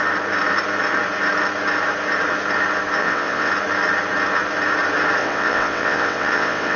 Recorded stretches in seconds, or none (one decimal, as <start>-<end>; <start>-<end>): 0.0-3.0; 3.5-5.2